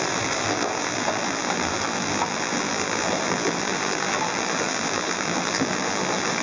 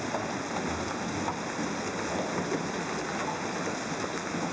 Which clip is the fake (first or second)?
first